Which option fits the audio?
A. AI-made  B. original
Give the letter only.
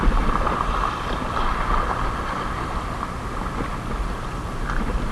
B